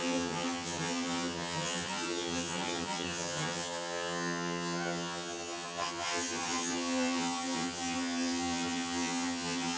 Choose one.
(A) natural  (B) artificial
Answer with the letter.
B